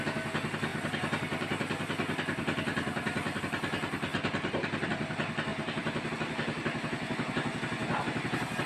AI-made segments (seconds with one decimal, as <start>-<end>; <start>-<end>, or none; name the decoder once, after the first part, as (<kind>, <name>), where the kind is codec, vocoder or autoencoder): 0.7-3.4 (vocoder, BigVGAN v2); 5.5-6.1